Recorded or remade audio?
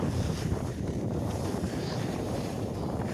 remade